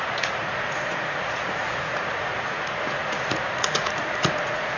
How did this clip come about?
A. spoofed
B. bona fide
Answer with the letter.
A